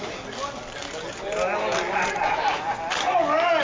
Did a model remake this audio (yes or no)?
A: no